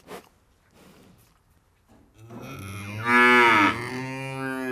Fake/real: real